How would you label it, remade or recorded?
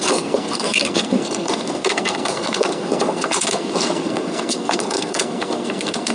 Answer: remade